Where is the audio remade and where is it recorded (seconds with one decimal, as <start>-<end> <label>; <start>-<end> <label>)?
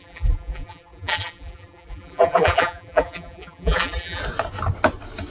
0.0-4.2 remade; 4.2-5.3 recorded